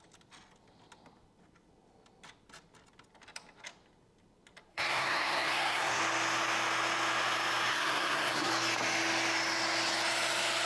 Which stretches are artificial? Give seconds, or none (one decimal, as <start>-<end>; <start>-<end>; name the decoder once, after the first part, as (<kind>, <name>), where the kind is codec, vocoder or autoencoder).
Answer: 4.7-6.0 (codec, SNAC); 7.7-8.5